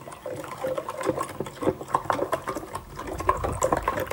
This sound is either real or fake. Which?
real